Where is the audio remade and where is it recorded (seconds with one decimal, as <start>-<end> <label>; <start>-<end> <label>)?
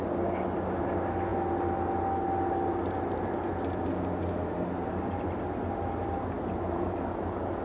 0.0-7.6 recorded